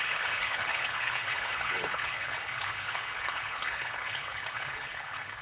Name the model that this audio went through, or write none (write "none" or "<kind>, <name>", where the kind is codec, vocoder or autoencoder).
codec, HILCodec